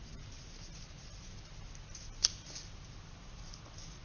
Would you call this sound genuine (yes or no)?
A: yes